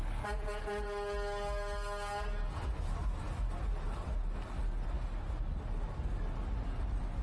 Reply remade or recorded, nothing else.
recorded